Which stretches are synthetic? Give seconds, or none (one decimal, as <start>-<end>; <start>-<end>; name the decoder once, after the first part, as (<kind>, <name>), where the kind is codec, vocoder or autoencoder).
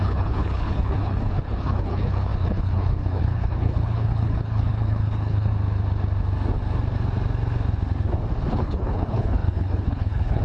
0.0-5.5 (codec, HILCodec); 8.5-10.4